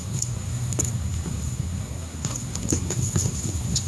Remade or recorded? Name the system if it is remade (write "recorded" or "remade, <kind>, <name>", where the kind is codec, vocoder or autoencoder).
remade, codec, SNAC